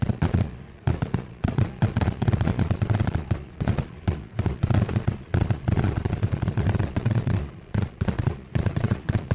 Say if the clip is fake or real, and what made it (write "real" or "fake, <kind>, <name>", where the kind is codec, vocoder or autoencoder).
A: fake, vocoder, Vocos